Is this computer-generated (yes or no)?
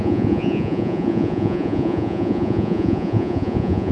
yes